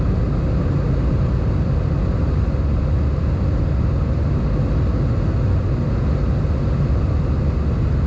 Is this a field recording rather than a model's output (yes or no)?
yes